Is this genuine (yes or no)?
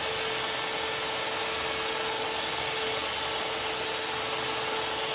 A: yes